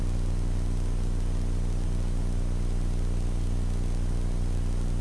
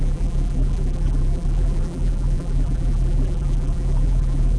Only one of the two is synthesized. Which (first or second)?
second